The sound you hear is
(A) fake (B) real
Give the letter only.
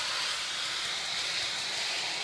B